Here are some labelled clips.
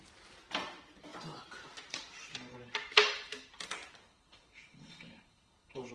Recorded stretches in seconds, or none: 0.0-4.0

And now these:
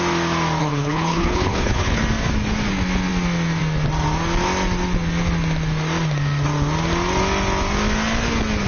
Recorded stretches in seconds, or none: 0.0-0.6; 2.0-8.7

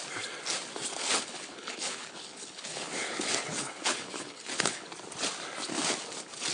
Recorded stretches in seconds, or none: 0.0-1.0; 4.9-6.5

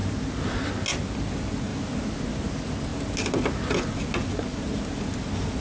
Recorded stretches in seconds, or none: 0.0-5.6